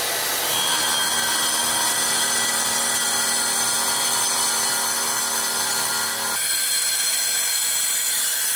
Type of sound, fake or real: real